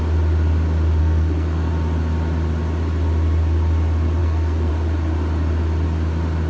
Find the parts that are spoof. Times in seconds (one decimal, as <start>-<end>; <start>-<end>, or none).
1.0-1.7; 4.2-4.7